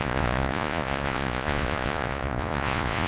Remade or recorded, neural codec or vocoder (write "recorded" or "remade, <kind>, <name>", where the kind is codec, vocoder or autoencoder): remade, vocoder, Vocos